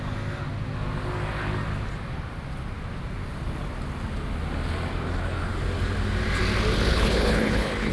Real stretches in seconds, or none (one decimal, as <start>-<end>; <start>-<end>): 0.0-6.9